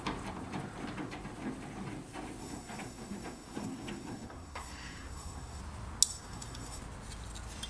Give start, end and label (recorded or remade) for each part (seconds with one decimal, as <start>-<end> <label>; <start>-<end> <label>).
0.0-2.4 recorded; 2.4-5.6 remade; 5.6-6.1 recorded; 6.1-6.8 remade; 6.8-7.7 recorded